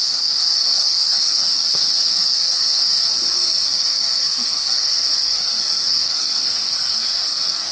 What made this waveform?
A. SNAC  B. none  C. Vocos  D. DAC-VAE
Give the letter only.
A